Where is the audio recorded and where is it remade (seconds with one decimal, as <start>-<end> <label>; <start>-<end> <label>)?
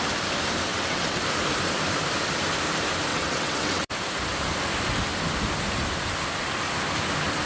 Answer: 0.0-0.7 recorded; 0.7-1.2 remade; 1.2-3.1 recorded; 3.1-3.9 remade; 3.9-7.5 recorded